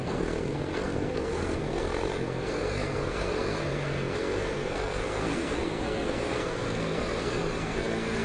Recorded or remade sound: remade